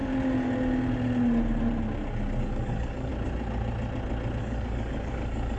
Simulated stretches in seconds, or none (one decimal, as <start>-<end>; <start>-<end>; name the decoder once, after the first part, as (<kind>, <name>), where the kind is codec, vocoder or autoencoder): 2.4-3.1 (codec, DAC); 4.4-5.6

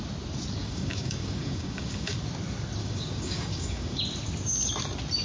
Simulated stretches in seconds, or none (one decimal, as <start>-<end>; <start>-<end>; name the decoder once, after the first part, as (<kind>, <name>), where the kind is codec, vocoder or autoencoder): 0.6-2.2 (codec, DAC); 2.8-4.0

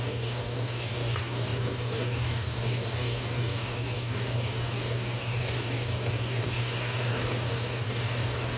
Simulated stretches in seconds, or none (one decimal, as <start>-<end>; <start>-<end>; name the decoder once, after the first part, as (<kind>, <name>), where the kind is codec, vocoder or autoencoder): 0.0-8.6 (codec, DAC)